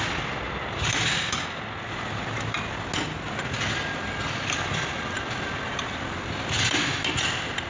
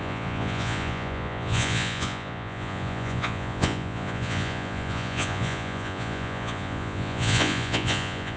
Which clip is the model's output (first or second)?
second